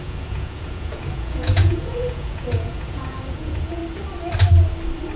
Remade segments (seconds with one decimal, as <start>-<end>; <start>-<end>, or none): 0.0-3.8